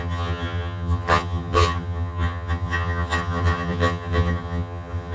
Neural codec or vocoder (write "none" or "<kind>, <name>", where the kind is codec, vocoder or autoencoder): vocoder, HiFi-GAN